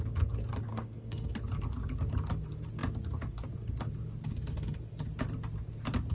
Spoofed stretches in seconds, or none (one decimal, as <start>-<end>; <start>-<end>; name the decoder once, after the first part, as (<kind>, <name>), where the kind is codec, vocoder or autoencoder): 0.7-1.3 (codec, SNAC)